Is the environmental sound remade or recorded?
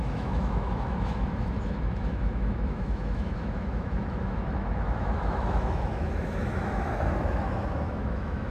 remade